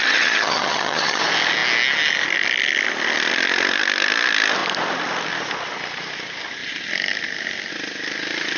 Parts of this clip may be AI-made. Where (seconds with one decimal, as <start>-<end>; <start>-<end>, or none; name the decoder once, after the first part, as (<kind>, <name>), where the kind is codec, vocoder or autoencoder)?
0.0-1.2 (vocoder, HiFi-GAN)